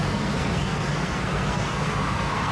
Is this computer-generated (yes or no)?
yes